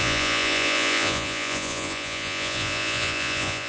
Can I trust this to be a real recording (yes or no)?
no